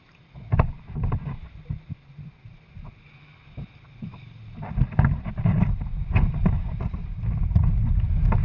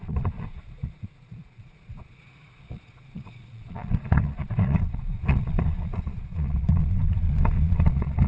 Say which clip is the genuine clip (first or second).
first